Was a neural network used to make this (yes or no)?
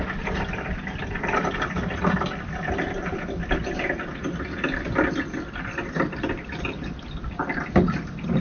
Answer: no